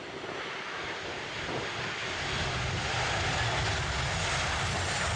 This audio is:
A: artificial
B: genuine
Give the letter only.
B